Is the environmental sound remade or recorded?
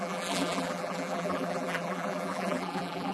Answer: remade